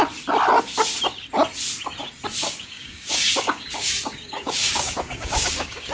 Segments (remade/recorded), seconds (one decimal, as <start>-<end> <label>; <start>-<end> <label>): 0.0-2.4 recorded; 2.4-5.9 remade